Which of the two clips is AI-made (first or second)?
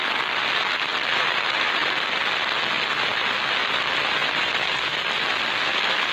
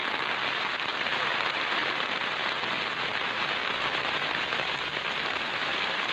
second